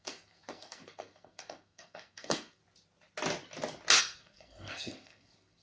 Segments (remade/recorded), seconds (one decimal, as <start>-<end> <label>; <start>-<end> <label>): 0.0-2.6 remade; 2.6-4.0 recorded; 4.0-5.6 remade